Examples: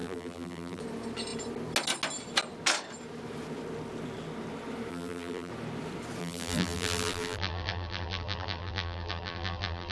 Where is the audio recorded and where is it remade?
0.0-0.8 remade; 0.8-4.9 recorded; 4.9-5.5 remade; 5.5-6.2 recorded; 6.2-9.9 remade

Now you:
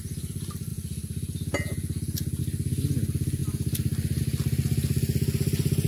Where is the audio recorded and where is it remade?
0.0-5.9 recorded

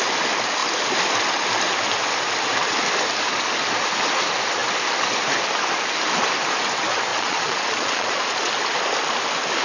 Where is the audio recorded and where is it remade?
0.0-7.1 recorded; 7.1-8.5 remade; 8.5-9.6 recorded

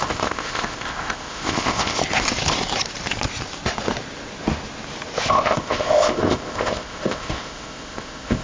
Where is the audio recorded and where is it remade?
0.0-2.0 remade; 2.0-5.3 recorded; 5.3-8.4 remade

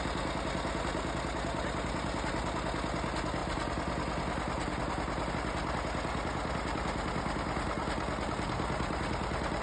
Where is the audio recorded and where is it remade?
0.0-9.6 recorded

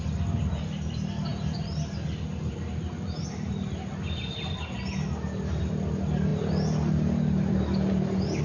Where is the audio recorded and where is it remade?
0.0-8.4 recorded

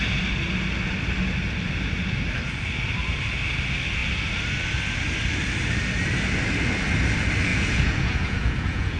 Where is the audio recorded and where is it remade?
0.0-7.5 recorded; 7.5-9.0 remade

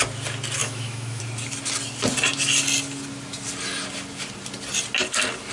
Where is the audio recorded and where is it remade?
0.0-0.6 recorded; 0.6-1.2 remade; 1.2-5.5 recorded